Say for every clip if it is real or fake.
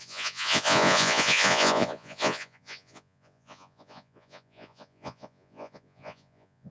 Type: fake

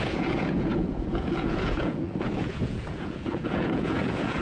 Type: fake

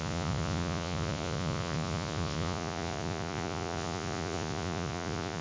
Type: fake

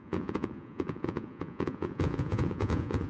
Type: fake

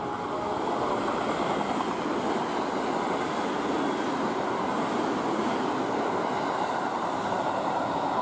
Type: real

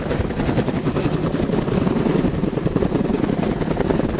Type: real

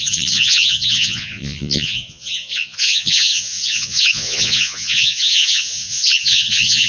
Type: fake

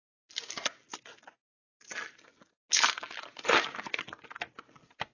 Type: real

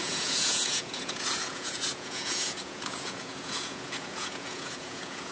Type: fake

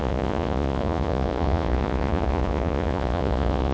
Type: fake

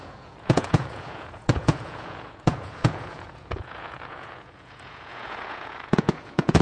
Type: fake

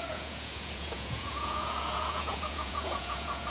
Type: fake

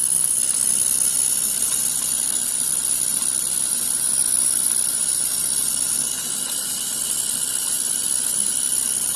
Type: real